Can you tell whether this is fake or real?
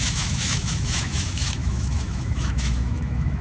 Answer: fake